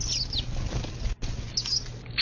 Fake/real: real